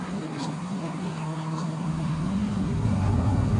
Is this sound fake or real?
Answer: fake